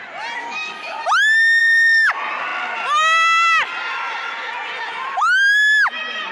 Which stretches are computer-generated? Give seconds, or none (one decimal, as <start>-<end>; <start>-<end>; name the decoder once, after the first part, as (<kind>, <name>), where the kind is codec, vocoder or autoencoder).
0.4-1.0 (codec, DAC); 1.6-2.1